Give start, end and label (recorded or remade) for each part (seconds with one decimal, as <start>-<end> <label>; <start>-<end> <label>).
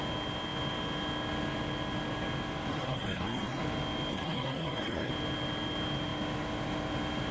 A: 0.0-2.7 recorded; 2.7-3.6 remade; 3.6-4.1 recorded; 4.1-5.1 remade; 5.1-7.3 recorded